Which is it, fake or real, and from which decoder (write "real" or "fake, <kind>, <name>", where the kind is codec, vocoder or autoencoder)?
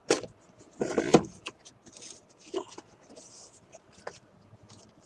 real